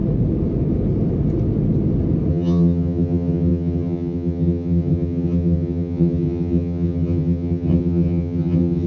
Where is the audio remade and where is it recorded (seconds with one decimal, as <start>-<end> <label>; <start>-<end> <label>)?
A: 0.0-2.3 recorded; 2.3-8.9 remade